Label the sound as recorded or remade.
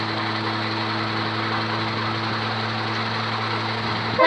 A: recorded